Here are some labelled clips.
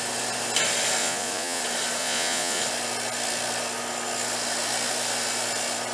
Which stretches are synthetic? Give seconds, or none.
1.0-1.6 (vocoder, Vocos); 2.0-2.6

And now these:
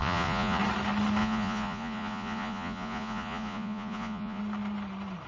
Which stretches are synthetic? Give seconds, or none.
0.0-0.6 (vocoder, Vocos); 1.2-4.4